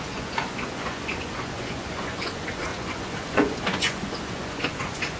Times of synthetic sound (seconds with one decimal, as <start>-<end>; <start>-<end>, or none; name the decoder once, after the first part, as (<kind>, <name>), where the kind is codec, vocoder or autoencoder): 0.0-5.2 (vocoder, Vocos)